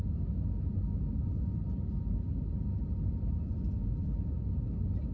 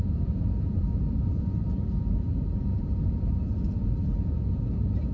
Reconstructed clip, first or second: second